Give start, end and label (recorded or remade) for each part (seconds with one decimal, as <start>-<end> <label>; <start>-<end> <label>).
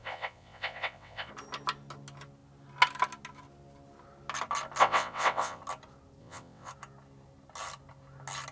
0.0-1.3 remade; 1.3-4.8 recorded; 4.8-5.6 remade; 5.6-6.2 recorded; 6.2-6.7 remade; 6.7-8.5 recorded